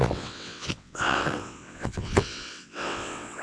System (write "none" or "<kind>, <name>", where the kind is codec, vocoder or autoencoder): vocoder, WaveNeXt